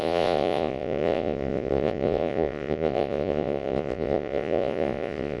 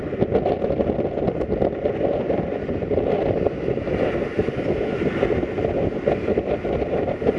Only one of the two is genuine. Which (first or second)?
second